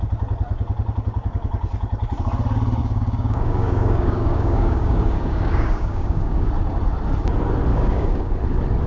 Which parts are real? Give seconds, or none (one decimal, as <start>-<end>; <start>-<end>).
0.0-2.8; 6.5-7.7; 8.3-8.9